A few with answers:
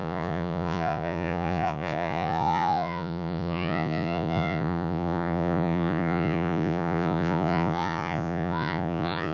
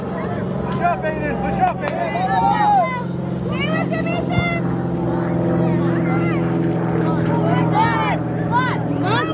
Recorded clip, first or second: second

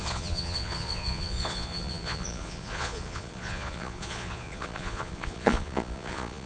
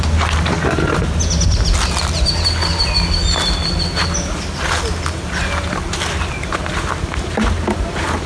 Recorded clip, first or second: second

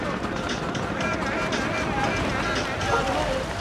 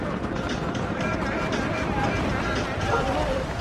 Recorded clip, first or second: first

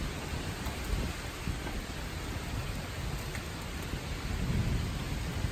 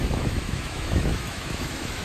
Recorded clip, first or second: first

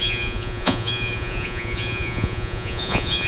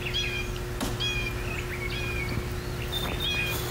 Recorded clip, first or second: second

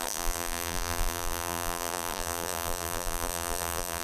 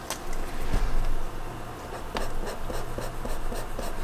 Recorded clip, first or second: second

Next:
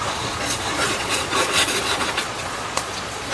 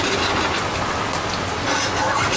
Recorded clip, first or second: second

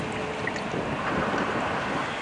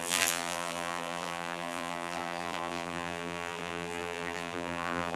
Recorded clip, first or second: first